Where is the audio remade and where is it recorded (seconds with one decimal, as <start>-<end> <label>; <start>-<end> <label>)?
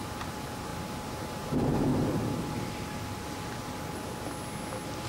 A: 0.0-1.9 remade; 1.9-5.1 recorded